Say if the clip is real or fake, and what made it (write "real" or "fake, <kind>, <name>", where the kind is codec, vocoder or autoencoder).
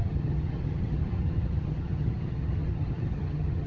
fake, vocoder, HiFi-GAN